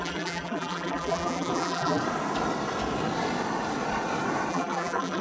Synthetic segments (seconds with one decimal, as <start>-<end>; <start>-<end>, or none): 0.0-2.0; 4.5-5.2